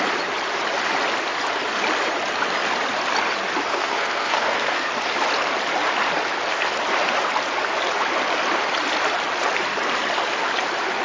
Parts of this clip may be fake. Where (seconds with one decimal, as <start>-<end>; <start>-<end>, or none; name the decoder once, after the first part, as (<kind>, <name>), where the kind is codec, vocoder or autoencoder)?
3.7-4.9 (codec, SNAC)